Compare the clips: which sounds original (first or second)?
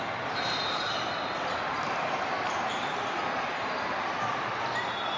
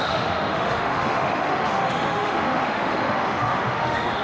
first